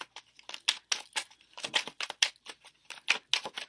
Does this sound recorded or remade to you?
recorded